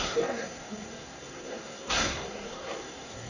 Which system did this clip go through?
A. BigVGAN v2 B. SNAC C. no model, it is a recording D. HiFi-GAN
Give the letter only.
B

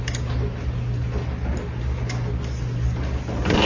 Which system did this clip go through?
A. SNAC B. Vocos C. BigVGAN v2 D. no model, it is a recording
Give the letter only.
D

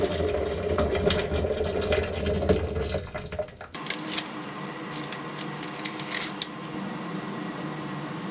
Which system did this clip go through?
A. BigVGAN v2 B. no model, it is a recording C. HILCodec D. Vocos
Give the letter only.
B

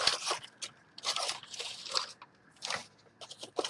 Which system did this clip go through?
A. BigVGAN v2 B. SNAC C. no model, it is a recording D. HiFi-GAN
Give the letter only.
C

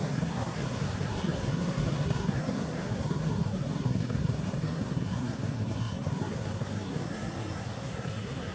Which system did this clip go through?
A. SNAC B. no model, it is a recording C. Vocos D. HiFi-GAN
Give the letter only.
A